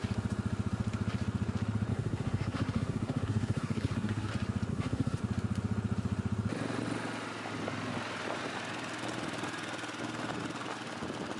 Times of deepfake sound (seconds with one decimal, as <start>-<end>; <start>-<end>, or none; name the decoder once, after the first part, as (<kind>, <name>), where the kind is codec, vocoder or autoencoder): 1.9-4.3 (codec, SNAC); 4.7-5.2